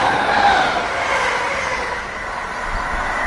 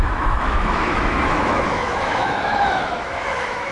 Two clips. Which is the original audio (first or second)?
first